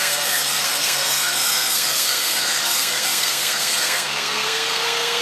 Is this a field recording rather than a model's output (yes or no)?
no